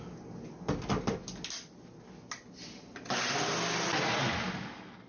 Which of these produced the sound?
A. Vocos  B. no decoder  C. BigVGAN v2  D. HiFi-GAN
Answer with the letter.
B